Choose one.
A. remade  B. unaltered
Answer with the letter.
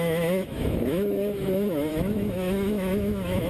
A